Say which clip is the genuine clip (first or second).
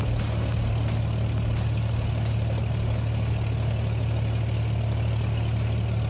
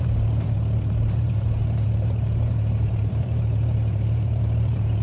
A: first